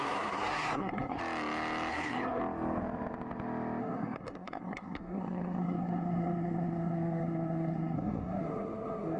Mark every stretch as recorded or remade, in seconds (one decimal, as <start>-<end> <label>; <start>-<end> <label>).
0.0-1.2 remade; 1.2-1.9 recorded; 1.9-2.4 remade; 2.4-3.8 recorded; 3.8-9.2 remade